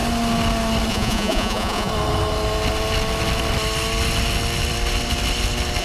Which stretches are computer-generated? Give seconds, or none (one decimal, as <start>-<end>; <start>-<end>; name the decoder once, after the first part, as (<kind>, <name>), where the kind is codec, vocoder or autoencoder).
0.9-1.9 (vocoder, Vocos)